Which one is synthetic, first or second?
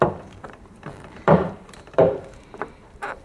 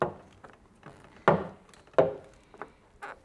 first